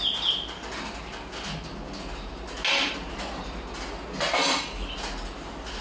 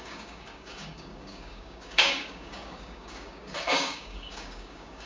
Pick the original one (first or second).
first